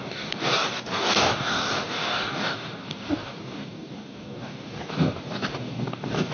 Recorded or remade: remade